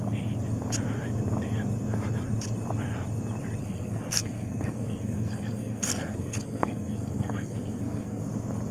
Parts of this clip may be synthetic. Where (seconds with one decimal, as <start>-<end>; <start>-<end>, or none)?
3.6-8.2